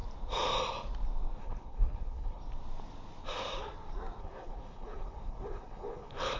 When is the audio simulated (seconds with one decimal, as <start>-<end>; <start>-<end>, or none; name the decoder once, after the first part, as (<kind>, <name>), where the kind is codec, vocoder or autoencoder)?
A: 1.4-2.4 (codec, HILCodec); 4.2-6.4

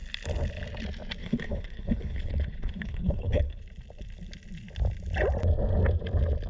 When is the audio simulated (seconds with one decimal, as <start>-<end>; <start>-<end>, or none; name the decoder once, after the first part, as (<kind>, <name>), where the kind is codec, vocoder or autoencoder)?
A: 1.2-3.6 (codec, HILCodec)

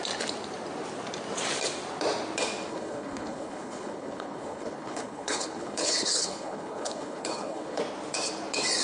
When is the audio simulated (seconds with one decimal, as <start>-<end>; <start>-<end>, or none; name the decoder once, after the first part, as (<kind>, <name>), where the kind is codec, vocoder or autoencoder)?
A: 2.7-7.8 (codec, HILCodec)

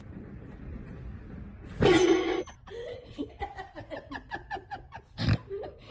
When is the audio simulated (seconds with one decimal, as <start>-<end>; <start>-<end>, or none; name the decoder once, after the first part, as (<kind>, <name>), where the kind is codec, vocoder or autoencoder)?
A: 2.9-3.4 (codec, HILCodec)

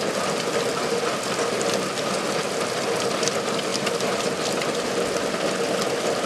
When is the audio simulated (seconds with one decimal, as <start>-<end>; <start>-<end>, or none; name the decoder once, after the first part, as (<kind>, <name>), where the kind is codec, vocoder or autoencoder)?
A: none

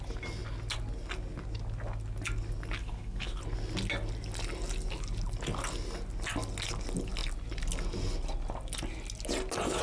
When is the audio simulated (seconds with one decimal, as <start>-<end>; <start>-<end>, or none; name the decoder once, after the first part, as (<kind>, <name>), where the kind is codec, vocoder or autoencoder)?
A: 2.8-3.4 (codec, HILCodec)

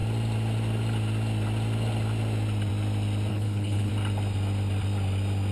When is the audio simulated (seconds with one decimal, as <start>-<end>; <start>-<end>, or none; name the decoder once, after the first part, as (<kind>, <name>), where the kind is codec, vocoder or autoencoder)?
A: 3.3-3.9 (codec, HILCodec)

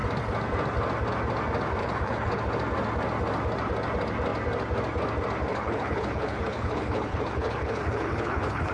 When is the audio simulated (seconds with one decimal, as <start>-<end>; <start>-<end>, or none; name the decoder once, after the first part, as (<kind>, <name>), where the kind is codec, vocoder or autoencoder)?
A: 1.8-2.4 (codec, HILCodec); 5.5-8.7